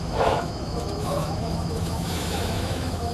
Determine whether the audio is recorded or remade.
remade